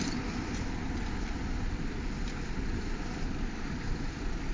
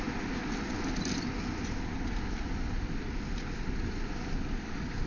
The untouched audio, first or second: second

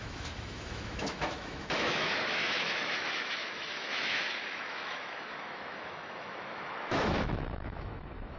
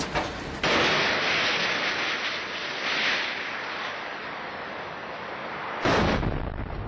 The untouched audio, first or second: second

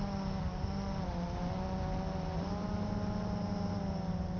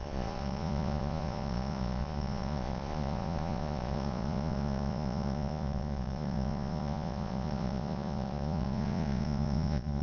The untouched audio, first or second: first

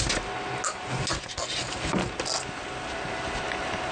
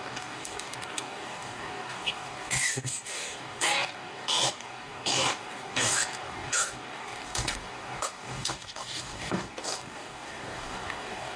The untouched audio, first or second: first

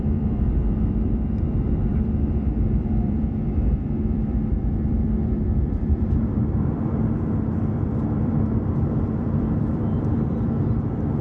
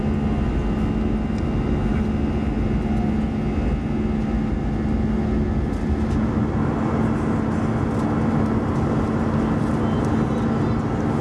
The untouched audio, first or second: second